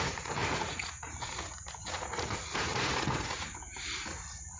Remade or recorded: remade